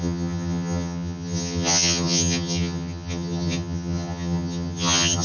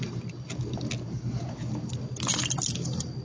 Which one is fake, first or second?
first